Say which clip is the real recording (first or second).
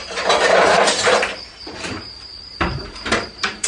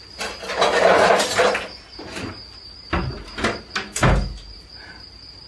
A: second